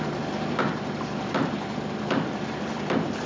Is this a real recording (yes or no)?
yes